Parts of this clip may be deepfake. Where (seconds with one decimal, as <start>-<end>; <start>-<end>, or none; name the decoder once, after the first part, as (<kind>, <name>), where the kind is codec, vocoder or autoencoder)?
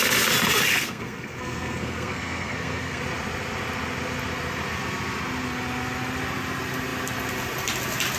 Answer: 0.7-3.0 (codec, SNAC)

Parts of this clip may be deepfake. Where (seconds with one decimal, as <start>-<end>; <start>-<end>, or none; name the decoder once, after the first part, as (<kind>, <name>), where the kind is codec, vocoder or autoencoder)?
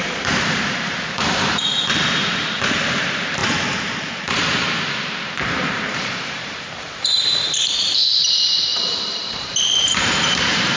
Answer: 0.0-1.7 (vocoder, BigVGAN v2); 2.2-10.8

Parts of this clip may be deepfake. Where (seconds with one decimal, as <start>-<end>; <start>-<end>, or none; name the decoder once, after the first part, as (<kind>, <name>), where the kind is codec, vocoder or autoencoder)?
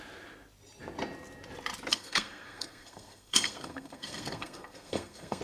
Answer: 1.9-5.4 (codec, SNAC)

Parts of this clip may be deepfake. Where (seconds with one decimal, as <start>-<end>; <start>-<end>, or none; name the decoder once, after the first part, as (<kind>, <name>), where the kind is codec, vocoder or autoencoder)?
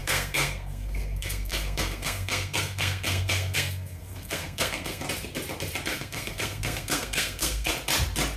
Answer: 0.0-5.0 (codec, SNAC); 5.9-7.7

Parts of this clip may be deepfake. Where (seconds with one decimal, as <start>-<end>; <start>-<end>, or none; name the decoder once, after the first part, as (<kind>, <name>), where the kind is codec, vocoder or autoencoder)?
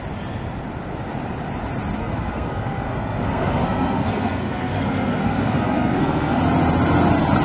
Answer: 2.0-6.4 (codec, SNAC)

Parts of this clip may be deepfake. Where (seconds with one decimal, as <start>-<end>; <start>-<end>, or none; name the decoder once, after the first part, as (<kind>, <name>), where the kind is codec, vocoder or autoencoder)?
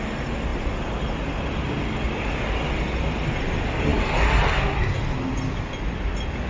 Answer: none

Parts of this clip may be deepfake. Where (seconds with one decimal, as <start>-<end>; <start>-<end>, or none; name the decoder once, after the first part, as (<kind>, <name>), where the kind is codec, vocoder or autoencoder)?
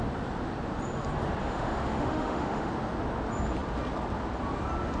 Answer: 1.4-2.7 (autoencoder, DAC-VAE)